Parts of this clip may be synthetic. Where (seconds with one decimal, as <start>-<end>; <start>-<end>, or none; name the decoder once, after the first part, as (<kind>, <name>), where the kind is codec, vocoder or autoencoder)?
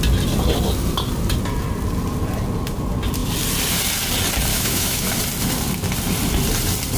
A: 4.5-5.2 (autoencoder, DAC-VAE)